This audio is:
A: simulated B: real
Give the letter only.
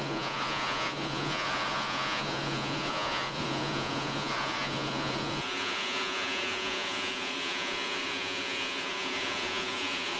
A